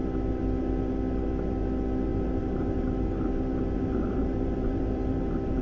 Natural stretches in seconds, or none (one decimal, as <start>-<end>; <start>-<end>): 0.0-2.1

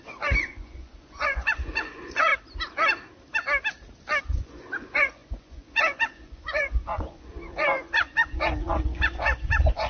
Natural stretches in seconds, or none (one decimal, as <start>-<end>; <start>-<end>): 2.3-4.2

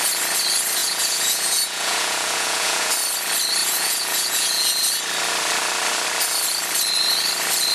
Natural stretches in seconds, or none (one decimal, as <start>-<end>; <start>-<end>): 0.0-0.8; 2.9-3.6; 4.8-7.7

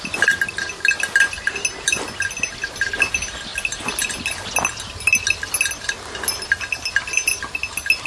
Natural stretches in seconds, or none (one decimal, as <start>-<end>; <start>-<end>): 0.0-8.1

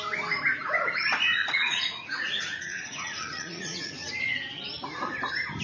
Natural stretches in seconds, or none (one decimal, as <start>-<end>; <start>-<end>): 0.0-1.4; 4.1-5.6

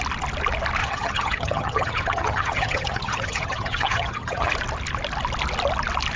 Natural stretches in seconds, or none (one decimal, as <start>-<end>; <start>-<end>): 0.0-0.8; 4.5-6.2

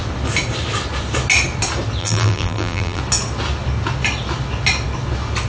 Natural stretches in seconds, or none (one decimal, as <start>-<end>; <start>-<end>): 0.0-2.0; 3.0-5.5